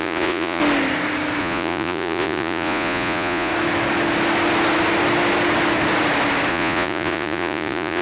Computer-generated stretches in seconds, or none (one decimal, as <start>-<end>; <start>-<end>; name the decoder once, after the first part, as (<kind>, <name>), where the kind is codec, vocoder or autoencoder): 0.0-0.6 (vocoder, Vocos); 1.4-3.5; 6.5-8.0